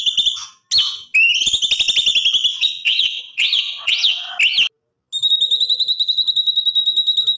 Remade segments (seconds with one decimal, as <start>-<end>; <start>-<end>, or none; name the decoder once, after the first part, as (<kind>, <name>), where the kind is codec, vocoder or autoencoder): 2.5-4.3 (vocoder, WaveNeXt)